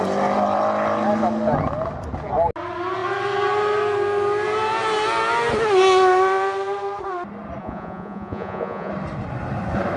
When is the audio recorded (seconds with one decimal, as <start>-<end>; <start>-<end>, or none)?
0.0-7.6; 8.9-10.0